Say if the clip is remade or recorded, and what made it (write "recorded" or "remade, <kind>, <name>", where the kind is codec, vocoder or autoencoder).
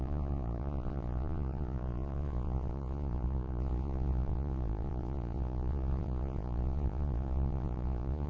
remade, vocoder, Vocos